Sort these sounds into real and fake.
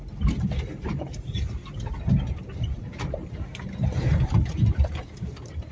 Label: fake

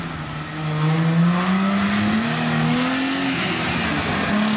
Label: real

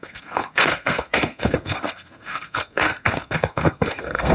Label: fake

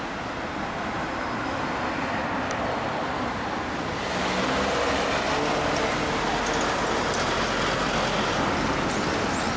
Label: real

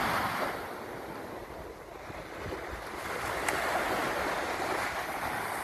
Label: real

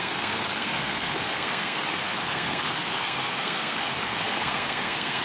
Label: fake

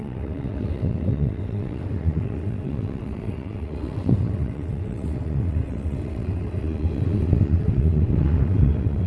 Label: fake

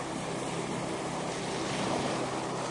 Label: real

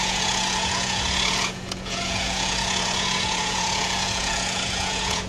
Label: fake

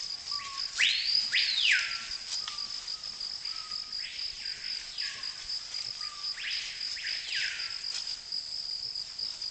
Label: real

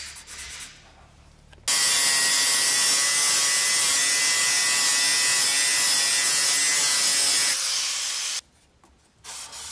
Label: real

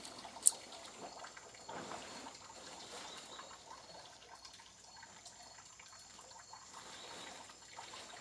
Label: fake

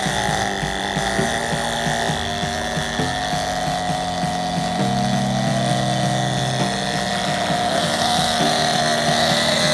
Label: real